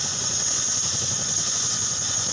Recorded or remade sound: remade